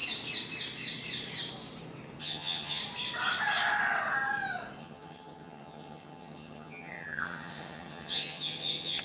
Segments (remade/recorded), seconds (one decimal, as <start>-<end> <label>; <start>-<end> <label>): 0.0-2.2 recorded; 2.2-2.8 remade; 2.8-4.8 recorded; 4.8-9.0 remade